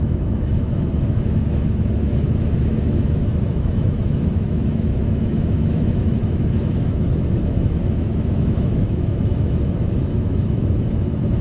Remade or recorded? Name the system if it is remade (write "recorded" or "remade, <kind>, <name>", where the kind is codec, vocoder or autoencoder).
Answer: remade, autoencoder, DAC-VAE